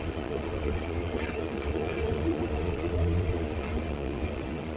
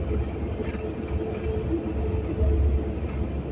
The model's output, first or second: first